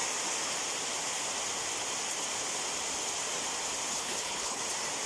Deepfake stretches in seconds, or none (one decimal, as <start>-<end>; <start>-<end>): 3.9-4.6